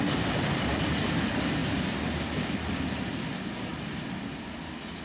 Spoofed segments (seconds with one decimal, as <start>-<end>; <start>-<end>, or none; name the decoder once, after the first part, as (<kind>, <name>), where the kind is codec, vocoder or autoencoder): none